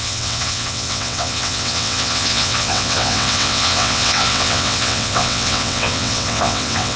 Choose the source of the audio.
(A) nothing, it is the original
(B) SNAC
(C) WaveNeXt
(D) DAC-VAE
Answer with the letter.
C